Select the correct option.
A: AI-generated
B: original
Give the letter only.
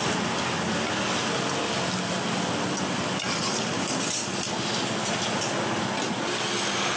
B